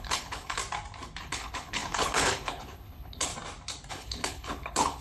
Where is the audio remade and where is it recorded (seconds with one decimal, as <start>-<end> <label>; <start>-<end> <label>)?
0.0-0.6 remade; 0.6-1.2 recorded; 1.2-3.3 remade; 3.3-3.9 recorded; 3.9-5.0 remade